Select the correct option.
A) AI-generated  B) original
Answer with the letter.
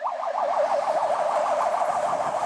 B